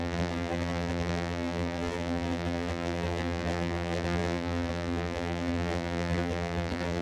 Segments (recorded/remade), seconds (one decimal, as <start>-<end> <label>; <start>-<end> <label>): 0.0-7.0 remade